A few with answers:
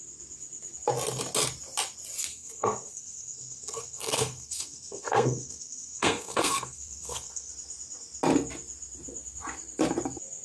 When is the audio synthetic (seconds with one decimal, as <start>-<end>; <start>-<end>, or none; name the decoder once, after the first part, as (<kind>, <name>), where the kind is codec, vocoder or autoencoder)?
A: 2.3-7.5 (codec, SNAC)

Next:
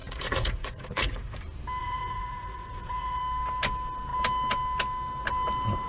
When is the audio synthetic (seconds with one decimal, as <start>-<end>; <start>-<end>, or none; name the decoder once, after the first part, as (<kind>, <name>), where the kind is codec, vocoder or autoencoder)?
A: 0.0-1.4 (vocoder, Vocos); 1.8-3.2

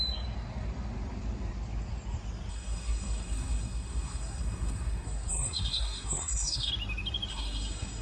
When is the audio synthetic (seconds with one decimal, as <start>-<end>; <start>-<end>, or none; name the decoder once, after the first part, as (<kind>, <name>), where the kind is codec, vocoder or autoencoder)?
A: 2.5-6.7 (codec, SNAC); 7.3-8.0

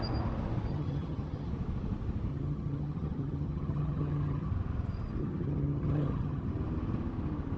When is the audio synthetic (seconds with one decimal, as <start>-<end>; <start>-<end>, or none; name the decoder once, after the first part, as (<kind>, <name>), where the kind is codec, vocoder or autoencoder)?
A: 0.7-1.5 (vocoder, HiFi-GAN); 2.3-4.5; 5.2-6.5

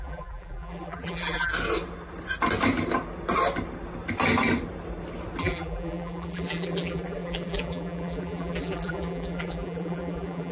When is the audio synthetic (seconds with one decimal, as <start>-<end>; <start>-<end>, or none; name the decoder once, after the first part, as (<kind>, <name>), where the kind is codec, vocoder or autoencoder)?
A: 0.0-1.5 (vocoder, BigVGAN v2); 5.4-10.5

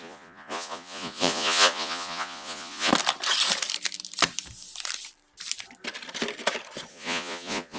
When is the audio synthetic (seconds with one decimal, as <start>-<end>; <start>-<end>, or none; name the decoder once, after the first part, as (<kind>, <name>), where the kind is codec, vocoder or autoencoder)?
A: 0.0-2.9 (vocoder, Vocos); 6.9-7.8

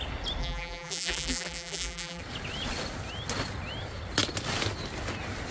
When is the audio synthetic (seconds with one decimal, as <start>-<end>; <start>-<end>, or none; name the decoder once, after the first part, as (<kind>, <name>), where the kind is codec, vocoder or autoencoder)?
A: 0.4-2.2 (vocoder, BigVGAN v2)